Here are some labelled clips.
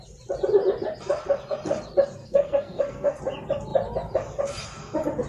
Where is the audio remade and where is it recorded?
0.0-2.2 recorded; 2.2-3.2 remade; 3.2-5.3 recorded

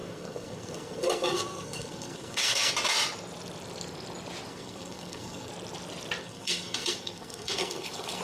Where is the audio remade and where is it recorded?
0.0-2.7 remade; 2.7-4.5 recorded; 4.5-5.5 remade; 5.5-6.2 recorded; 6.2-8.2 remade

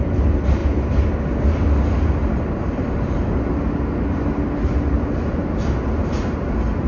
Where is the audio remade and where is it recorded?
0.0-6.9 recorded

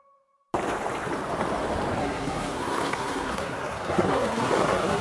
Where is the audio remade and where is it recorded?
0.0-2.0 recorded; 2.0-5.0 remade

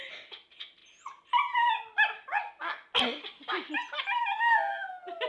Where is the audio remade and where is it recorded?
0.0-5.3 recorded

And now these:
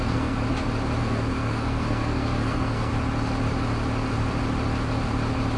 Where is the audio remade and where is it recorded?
0.0-0.4 remade; 0.4-1.0 recorded; 1.0-2.9 remade; 2.9-5.6 recorded